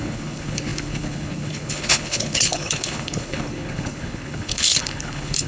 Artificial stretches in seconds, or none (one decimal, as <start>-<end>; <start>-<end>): 0.0-5.5